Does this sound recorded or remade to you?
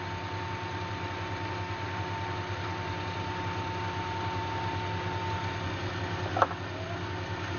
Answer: recorded